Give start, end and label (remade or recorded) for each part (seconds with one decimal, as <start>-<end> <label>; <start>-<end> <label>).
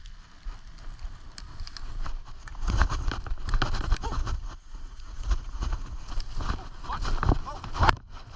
0.0-2.4 recorded; 2.4-3.1 remade; 3.1-4.0 recorded; 4.0-6.1 remade; 6.1-8.4 recorded